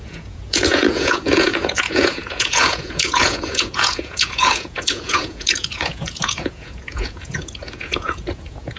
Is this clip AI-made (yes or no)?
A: yes